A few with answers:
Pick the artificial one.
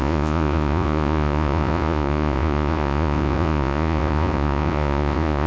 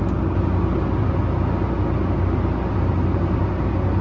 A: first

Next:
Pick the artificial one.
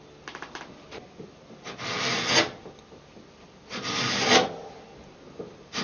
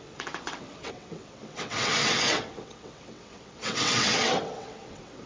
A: second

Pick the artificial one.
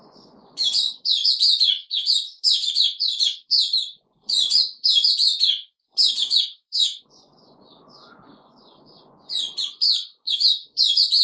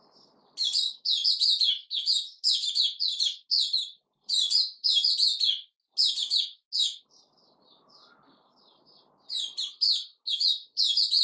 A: first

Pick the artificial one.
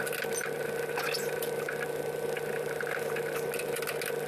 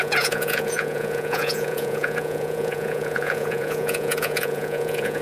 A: second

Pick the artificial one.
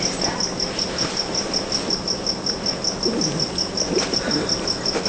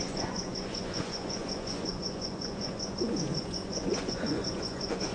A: second